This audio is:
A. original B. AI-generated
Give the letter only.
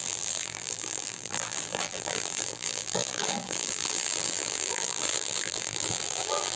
B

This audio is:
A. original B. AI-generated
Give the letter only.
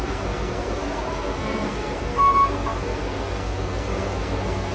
B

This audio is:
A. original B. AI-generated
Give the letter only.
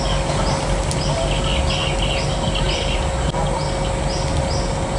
A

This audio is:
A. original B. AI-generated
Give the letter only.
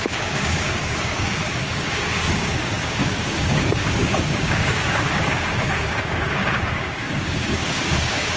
B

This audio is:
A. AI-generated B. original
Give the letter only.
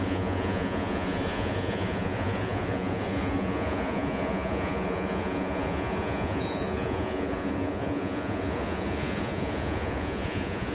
A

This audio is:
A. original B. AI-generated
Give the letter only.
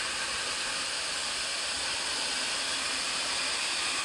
A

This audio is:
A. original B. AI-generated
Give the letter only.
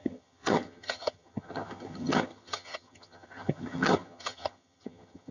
B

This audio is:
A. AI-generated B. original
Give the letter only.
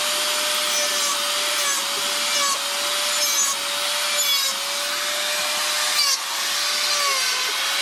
B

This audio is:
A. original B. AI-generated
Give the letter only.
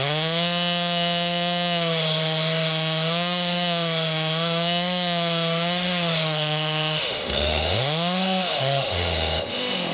B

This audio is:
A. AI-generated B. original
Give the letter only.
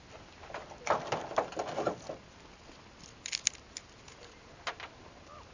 B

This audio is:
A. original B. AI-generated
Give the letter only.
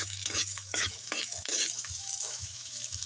B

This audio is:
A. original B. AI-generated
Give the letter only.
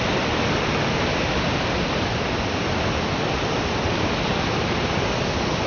A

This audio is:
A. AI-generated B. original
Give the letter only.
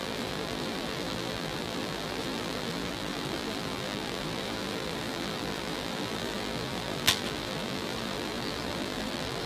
A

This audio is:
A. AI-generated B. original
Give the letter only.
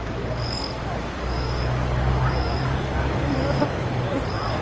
A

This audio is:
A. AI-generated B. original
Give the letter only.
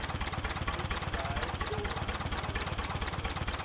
B